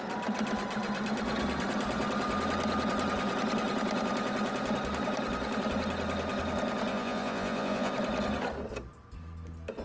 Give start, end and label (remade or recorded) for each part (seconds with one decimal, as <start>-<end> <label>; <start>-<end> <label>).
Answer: 0.0-6.9 recorded; 6.9-7.9 remade; 7.9-9.8 recorded